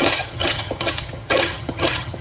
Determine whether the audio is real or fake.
fake